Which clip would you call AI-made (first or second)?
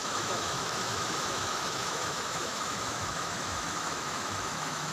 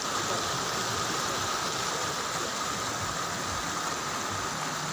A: first